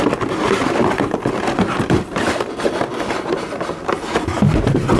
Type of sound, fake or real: real